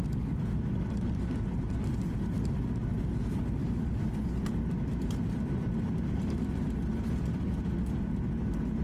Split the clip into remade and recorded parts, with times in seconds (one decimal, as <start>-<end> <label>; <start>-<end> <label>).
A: 0.0-3.6 recorded; 3.6-4.1 remade; 4.1-8.8 recorded